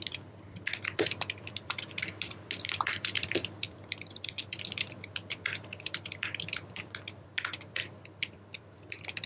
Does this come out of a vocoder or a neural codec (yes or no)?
yes